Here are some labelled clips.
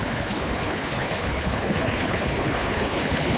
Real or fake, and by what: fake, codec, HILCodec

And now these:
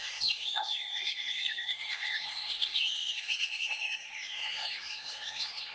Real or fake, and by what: fake, codec, SNAC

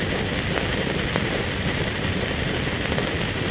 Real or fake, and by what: real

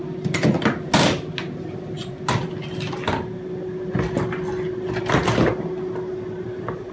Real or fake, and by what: real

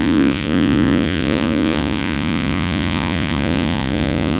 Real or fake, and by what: fake, vocoder, Vocos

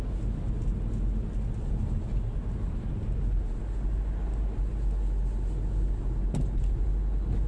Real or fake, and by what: real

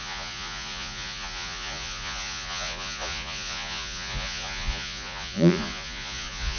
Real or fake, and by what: fake, vocoder, Vocos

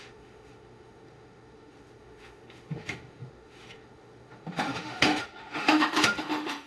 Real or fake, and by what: fake, autoencoder, DAC-VAE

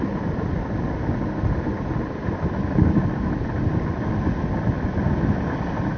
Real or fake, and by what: real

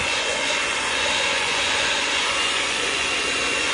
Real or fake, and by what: fake, vocoder, Vocos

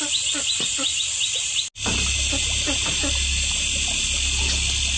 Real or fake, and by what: real